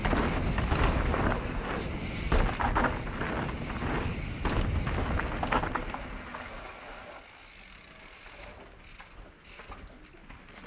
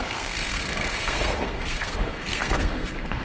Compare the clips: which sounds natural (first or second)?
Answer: first